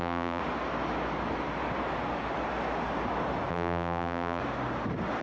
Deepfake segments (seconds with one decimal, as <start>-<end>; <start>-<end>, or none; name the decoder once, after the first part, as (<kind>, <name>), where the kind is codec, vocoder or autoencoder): 0.0-0.4 (vocoder, BigVGAN v2); 3.5-4.4